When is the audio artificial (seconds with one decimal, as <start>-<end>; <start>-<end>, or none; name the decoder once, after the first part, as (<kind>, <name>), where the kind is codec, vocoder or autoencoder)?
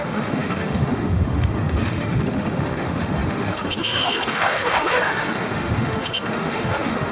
0.0-7.1 (autoencoder, DAC-VAE)